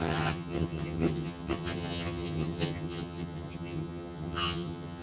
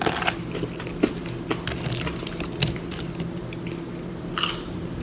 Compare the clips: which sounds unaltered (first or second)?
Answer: second